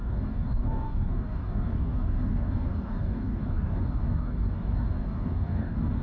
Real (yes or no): no